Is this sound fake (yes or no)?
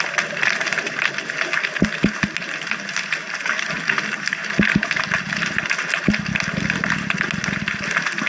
no